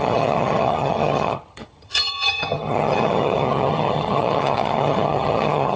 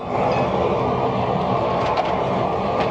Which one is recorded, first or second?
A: second